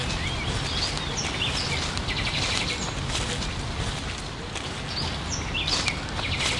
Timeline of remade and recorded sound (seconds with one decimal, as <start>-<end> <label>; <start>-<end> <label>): 0.0-6.6 recorded